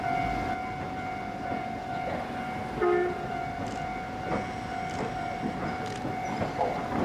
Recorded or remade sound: remade